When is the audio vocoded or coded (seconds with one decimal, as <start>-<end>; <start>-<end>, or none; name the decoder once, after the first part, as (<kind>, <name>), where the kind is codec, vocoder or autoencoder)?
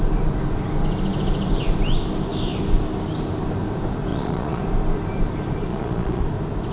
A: 4.1-4.6 (vocoder, Vocos); 5.7-6.2